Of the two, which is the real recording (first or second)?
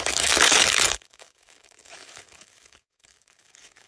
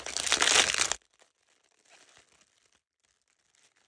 second